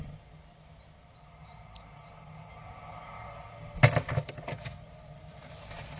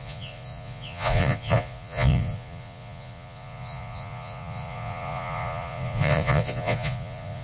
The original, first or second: first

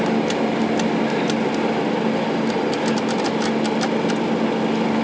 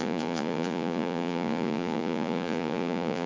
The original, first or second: first